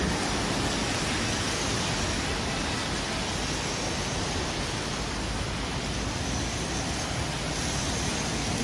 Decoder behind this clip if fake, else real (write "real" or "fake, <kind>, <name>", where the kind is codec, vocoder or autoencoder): real